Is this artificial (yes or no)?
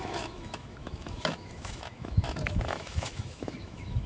yes